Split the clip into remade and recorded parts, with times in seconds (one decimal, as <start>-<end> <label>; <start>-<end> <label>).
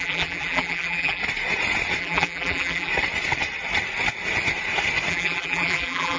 0.0-1.2 remade; 1.2-2.0 recorded; 2.0-2.9 remade; 2.9-5.1 recorded; 5.1-6.2 remade